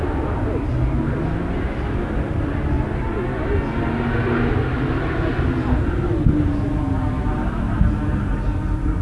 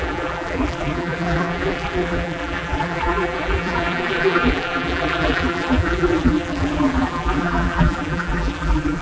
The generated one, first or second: second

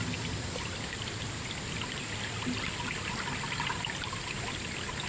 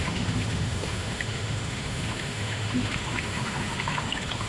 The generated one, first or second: second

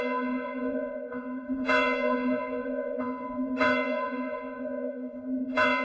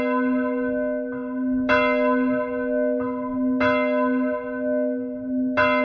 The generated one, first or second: first